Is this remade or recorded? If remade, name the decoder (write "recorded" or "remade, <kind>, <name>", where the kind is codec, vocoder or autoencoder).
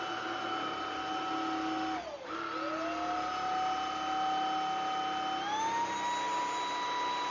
recorded